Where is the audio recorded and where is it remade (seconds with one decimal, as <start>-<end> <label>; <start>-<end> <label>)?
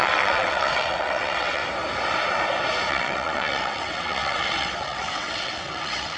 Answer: 0.0-1.6 remade; 1.6-2.9 recorded; 2.9-6.2 remade